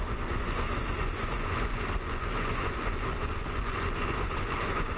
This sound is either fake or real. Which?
fake